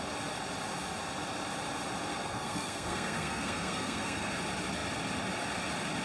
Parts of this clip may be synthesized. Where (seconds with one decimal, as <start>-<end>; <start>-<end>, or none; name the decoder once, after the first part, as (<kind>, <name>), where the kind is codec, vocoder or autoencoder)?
2.1-4.3 (codec, SNAC)